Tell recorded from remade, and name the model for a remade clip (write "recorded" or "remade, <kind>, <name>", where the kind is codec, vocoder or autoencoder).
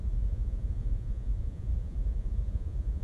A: remade, vocoder, Vocos